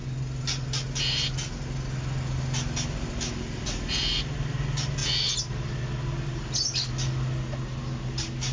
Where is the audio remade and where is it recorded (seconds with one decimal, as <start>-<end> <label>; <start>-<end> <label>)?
0.0-8.5 recorded